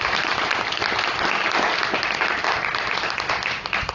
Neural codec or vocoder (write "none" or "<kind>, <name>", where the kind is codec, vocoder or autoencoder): none